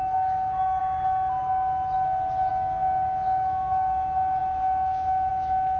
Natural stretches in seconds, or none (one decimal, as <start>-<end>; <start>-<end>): 0.8-2.5